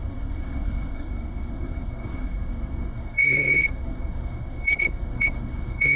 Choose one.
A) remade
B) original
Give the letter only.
A